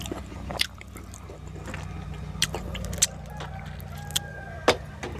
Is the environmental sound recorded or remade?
recorded